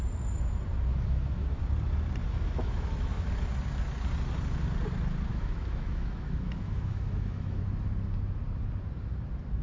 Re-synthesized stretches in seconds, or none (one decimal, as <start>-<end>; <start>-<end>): 0.9-1.6; 2.2-3.3; 5.3-7.6